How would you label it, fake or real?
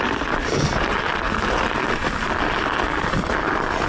real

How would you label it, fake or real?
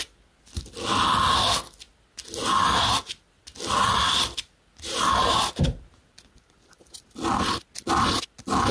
real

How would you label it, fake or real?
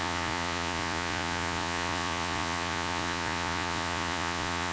fake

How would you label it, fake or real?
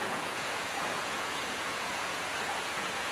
fake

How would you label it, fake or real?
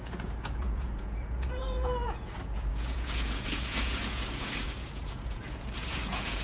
fake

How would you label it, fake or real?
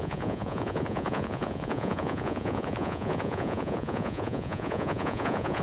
fake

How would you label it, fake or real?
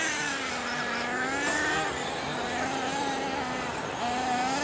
real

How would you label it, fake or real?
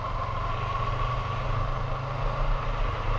real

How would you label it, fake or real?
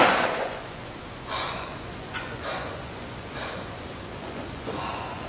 fake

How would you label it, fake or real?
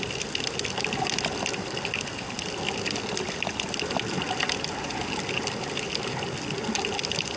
real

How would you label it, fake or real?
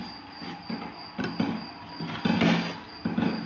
real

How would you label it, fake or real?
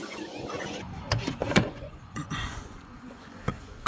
fake